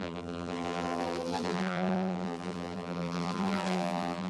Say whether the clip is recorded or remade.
remade